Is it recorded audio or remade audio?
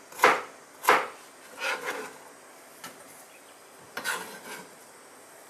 recorded